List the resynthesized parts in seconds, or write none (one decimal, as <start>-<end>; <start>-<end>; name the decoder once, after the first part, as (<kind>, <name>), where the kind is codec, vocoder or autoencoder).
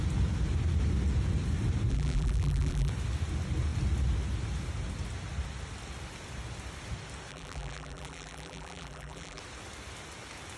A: 1.9-2.9 (vocoder, BigVGAN v2); 7.3-9.4